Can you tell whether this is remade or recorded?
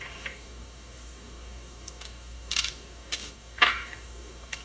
remade